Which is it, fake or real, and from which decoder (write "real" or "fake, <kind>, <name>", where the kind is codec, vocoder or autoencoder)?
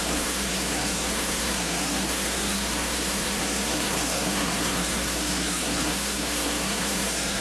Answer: fake, codec, SNAC